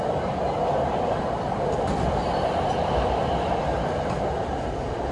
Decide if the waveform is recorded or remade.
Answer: recorded